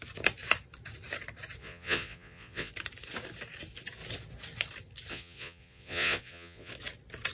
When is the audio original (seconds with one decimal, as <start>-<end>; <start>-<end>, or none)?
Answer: 0.0-1.6; 2.7-5.1; 6.7-7.3